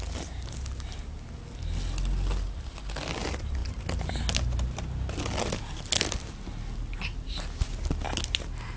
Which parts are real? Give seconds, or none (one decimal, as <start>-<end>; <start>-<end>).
0.0-8.8